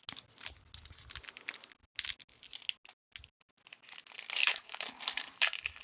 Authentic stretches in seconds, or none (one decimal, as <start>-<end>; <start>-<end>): 0.0-4.4; 5.0-5.8